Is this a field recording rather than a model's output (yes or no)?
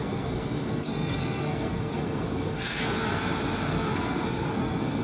no